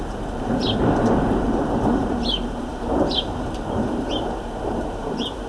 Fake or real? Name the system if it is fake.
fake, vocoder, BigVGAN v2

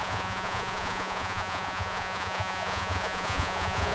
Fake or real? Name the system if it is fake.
fake, vocoder, Vocos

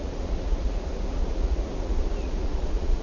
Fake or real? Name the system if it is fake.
fake, vocoder, Vocos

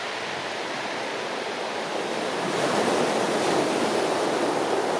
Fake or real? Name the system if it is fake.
real